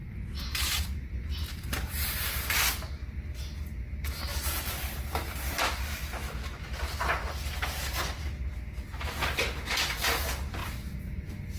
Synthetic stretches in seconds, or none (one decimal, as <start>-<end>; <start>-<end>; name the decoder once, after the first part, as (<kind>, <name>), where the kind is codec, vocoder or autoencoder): 0.0-2.9 (vocoder, BigVGAN v2); 4.3-5.6